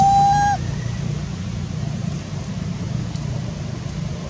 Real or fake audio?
real